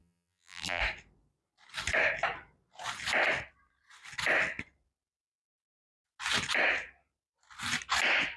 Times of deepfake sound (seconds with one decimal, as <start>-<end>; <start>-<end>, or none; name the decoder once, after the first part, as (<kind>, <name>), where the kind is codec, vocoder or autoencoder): 0.0-0.8 (vocoder, BigVGAN v2)